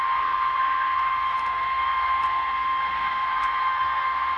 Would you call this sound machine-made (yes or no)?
yes